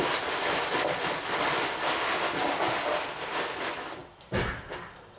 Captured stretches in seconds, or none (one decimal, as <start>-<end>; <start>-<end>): 0.0-5.2